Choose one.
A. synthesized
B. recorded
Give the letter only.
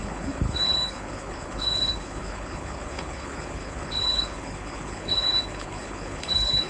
A